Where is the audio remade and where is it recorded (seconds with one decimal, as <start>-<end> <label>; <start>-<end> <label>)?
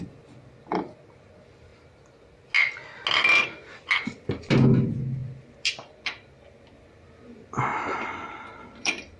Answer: 0.0-5.2 recorded; 5.2-6.6 remade; 6.6-7.7 recorded; 7.7-9.2 remade